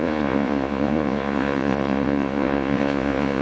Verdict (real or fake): fake